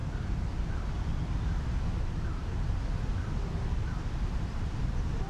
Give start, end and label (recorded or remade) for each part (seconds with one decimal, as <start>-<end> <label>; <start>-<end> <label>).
0.0-5.3 recorded